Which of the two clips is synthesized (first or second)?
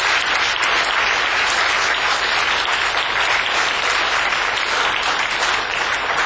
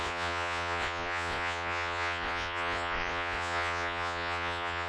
second